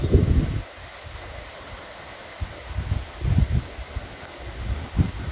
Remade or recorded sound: recorded